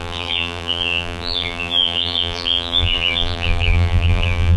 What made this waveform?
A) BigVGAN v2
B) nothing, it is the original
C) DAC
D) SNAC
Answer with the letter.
A